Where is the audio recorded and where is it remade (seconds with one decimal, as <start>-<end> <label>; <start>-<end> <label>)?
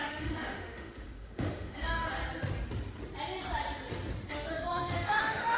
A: 0.0-2.2 remade; 2.2-4.3 recorded; 4.3-5.6 remade